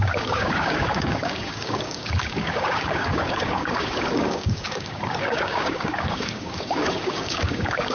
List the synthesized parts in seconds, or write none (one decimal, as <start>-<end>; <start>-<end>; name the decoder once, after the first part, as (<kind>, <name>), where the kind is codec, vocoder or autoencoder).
0.0-7.9 (codec, DAC)